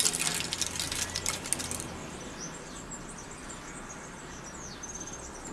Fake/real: real